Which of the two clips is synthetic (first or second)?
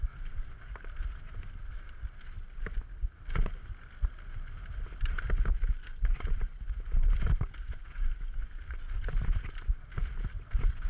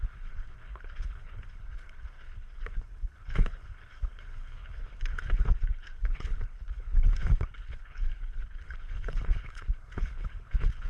second